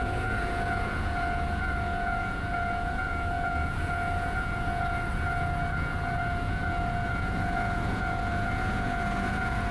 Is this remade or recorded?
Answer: remade